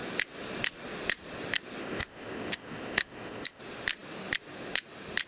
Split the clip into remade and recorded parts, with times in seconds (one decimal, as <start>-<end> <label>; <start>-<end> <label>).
0.0-1.8 recorded; 1.8-3.6 remade; 3.6-5.3 recorded

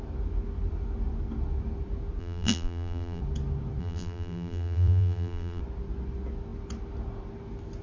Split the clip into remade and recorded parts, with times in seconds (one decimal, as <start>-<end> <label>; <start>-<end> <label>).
0.0-2.2 recorded; 2.2-3.2 remade; 3.2-3.8 recorded; 3.8-5.6 remade; 5.6-7.8 recorded

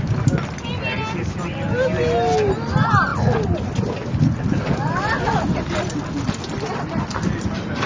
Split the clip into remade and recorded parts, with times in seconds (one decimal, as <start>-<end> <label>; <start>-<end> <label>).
0.0-7.9 recorded

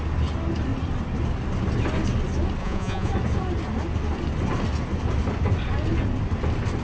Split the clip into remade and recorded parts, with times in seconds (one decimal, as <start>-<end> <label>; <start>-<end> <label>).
0.0-2.6 recorded; 2.6-3.1 remade; 3.1-6.8 recorded

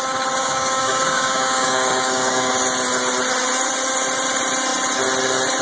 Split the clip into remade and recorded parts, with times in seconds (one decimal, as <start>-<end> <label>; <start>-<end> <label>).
0.0-0.4 recorded; 0.4-2.5 remade; 2.5-5.6 recorded

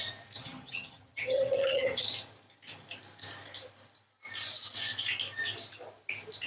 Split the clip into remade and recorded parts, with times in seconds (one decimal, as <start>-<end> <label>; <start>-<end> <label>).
0.0-0.4 recorded; 0.4-2.0 remade; 2.0-6.5 recorded

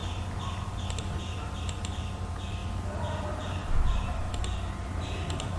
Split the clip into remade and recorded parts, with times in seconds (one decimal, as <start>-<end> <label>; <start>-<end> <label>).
0.0-1.2 recorded; 1.2-2.6 remade; 2.6-3.3 recorded; 3.3-4.2 remade; 4.2-5.0 recorded; 5.0-5.6 remade